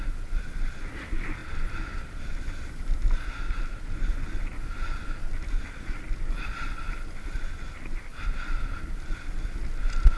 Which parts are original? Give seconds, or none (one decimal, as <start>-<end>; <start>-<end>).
0.0-10.2